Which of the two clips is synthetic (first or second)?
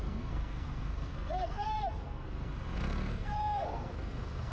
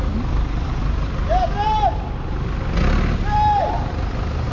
first